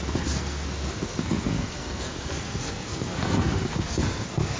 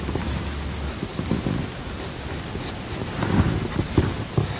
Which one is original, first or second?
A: second